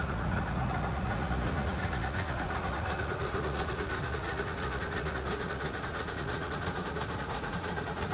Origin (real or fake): fake